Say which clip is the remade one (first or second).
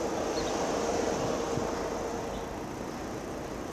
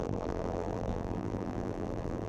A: second